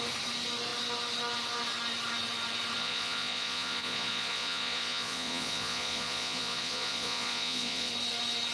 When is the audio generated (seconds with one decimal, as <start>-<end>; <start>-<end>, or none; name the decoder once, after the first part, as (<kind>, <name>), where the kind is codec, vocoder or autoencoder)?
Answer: 2.8-7.9 (vocoder, Vocos)